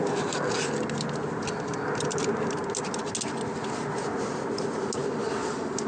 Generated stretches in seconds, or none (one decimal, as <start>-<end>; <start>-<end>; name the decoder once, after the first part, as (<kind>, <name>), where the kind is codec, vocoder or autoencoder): none